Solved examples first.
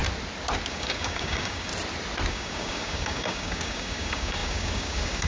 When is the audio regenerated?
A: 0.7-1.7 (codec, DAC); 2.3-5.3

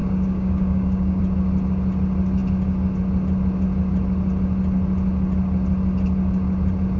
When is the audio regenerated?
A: 0.0-1.2 (codec, DAC)

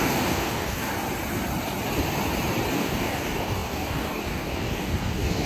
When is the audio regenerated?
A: 0.0-0.9 (codec, DAC); 2.7-5.5

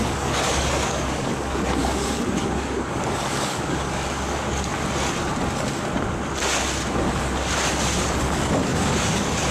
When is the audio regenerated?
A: 0.0-4.7 (codec, DAC); 8.0-9.5

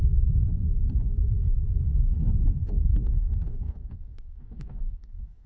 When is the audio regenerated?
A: 2.6-5.5 (codec, DAC)

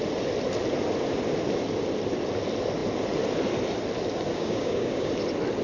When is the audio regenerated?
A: 4.3-5.1 (codec, DAC)